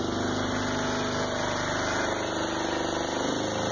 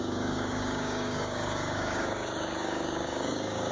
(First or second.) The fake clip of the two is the second